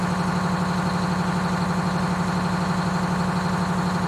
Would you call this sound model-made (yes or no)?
no